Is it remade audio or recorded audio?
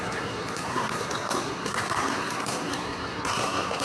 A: remade